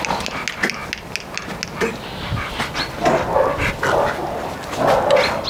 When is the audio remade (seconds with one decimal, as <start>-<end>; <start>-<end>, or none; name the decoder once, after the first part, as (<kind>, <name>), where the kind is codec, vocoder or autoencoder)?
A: none